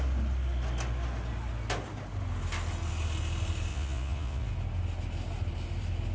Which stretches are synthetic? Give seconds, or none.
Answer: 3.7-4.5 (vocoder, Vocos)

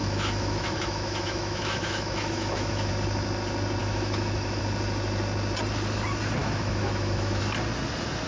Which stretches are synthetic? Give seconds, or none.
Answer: 0.0-2.9 (autoencoder, DAC-VAE); 3.8-4.6; 6.4-7.4

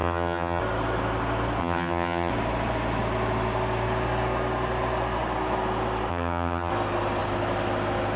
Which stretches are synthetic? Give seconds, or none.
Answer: 0.0-0.6 (vocoder, HiFi-GAN); 1.6-2.3; 6.1-6.7

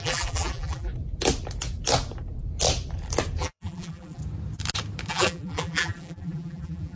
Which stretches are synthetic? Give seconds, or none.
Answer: 0.0-0.9 (vocoder, BigVGAN v2); 3.4-4.2; 5.1-7.0

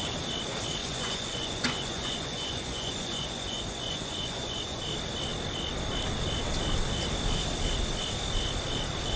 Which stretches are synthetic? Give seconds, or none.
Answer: 0.8-4.8 (vocoder, Vocos)

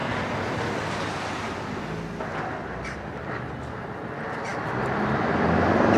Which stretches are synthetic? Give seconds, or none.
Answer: none

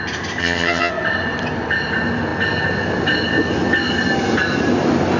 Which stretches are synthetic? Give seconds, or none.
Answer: 0.4-0.9 (vocoder, HiFi-GAN)

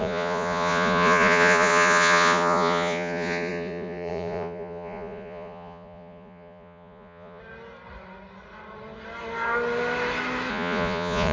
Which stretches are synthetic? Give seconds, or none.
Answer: 0.0-7.4 (vocoder, Vocos); 10.5-11.3